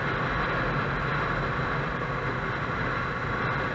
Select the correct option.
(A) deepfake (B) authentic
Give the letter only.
B